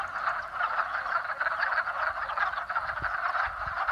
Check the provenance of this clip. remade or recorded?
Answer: recorded